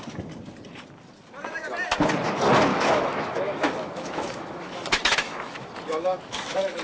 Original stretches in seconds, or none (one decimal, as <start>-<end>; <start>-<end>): 0.0-2.7